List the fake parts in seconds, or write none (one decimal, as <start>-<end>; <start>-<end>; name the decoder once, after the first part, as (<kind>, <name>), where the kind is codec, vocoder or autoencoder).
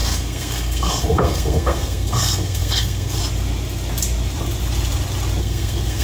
0.0-3.2 (codec, SNAC); 5.4-6.0